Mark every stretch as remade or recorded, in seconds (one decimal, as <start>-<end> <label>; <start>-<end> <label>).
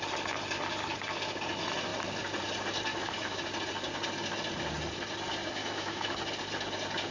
0.0-2.9 recorded; 2.9-3.4 remade; 3.4-5.6 recorded; 5.6-6.1 remade; 6.1-7.1 recorded